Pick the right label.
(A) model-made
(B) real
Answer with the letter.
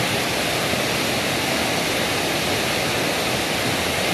B